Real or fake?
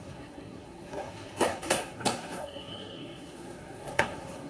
fake